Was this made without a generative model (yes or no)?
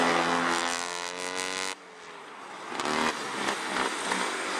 yes